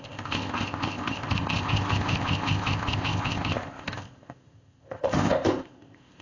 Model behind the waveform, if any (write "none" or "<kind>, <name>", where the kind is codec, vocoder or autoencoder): codec, ZipCodec